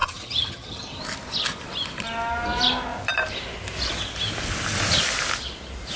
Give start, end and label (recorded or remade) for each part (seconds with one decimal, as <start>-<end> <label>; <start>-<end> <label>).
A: 0.0-1.0 remade; 1.0-6.0 recorded